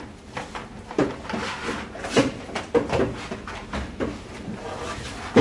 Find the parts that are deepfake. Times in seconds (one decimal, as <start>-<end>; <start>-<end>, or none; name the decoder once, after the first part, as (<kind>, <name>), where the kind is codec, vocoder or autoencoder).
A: 3.6-4.8 (vocoder, BigVGAN v2)

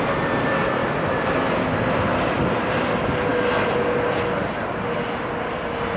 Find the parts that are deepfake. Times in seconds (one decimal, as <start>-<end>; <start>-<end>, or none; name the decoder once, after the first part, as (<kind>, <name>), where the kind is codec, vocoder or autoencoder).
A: 0.8-1.5 (vocoder, BigVGAN v2); 2.1-2.9

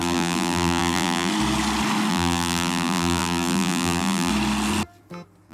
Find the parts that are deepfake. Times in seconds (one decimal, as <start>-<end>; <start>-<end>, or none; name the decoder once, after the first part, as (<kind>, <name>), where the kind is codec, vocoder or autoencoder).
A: 0.0-1.3 (vocoder, BigVGAN v2); 2.1-4.3

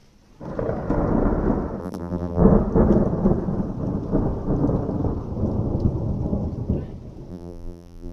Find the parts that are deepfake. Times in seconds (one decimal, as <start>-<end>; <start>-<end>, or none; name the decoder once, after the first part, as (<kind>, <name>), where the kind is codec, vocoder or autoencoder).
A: 1.8-2.4 (vocoder, BigVGAN v2); 7.3-8.1

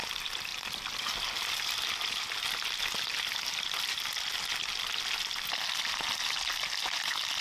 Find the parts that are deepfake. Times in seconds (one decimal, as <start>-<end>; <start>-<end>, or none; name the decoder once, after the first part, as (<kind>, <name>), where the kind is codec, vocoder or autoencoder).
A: 0.5-1.8 (vocoder, BigVGAN v2); 3.5-6.0

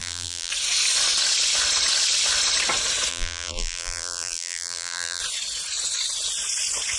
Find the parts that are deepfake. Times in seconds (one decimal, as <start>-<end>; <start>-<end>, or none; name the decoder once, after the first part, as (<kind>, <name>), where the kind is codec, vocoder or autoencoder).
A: 0.0-0.5 (vocoder, BigVGAN v2); 3.1-5.2